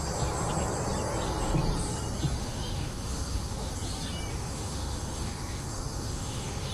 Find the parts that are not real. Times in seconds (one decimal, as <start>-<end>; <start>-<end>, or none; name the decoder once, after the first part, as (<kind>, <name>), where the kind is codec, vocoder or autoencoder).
2.4-3.7 (autoencoder, DAC-VAE); 4.3-6.7